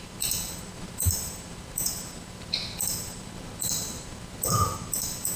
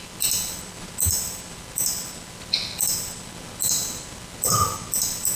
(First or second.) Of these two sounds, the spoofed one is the first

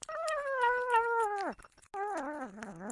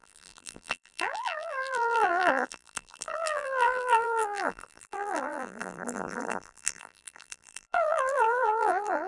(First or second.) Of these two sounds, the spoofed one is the second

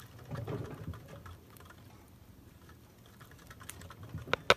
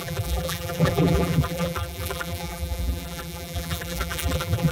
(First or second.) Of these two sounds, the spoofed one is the second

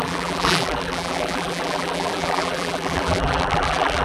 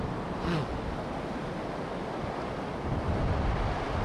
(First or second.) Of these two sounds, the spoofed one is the first